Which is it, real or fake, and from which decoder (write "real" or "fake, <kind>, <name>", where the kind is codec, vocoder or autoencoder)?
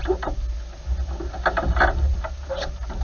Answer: real